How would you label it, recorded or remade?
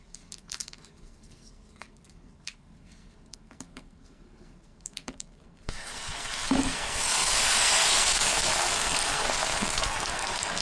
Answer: remade